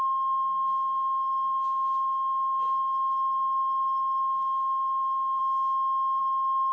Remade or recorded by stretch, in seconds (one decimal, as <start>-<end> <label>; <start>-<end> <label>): 0.0-5.4 remade; 5.4-6.2 recorded; 6.2-6.7 remade